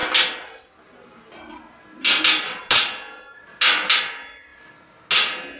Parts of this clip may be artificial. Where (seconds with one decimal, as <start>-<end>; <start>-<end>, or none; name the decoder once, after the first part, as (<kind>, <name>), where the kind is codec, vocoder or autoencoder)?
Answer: none